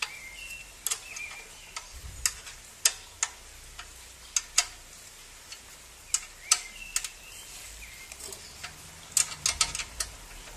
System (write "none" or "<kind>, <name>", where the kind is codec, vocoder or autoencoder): none